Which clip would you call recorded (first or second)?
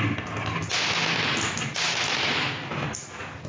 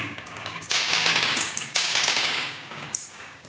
first